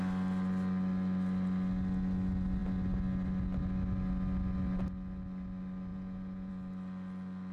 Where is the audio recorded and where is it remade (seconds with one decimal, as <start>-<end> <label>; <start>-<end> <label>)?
0.0-5.9 recorded; 5.9-6.5 remade; 6.5-7.5 recorded